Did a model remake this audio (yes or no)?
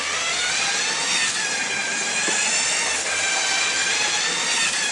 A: no